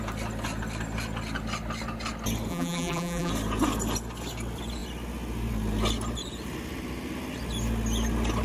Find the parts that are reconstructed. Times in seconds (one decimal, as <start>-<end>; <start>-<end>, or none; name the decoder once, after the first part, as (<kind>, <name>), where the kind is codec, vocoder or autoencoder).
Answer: 2.5-3.3 (vocoder, BigVGAN v2)